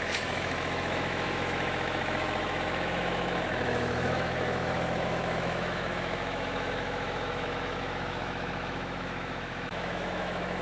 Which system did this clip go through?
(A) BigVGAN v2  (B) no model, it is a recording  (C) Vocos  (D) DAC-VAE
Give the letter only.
D